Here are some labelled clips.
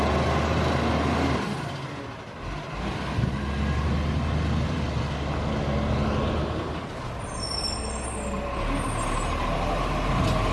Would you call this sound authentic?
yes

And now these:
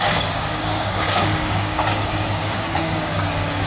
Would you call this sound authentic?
no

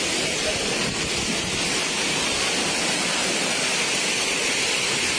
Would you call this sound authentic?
yes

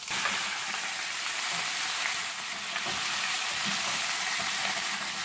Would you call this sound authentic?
yes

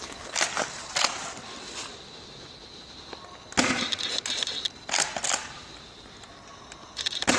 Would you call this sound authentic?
yes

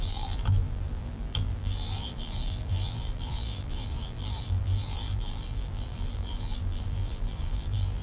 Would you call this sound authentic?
no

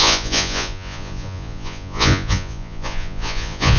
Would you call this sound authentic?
no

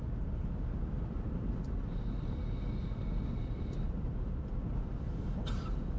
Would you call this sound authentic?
yes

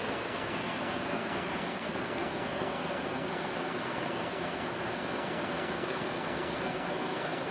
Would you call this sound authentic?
no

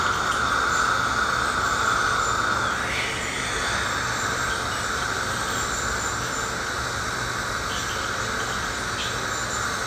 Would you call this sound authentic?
yes